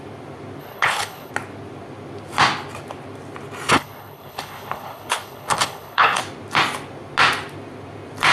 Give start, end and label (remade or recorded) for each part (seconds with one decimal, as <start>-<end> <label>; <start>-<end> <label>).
0.0-0.6 recorded; 0.6-1.3 remade; 1.3-3.7 recorded; 3.7-6.2 remade; 6.2-8.3 recorded